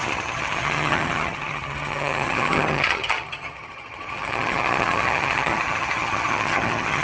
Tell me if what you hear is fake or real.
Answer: fake